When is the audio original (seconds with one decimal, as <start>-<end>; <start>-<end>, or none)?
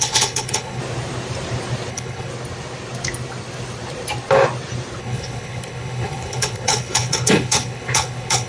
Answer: 0.8-1.9; 2.3-5.0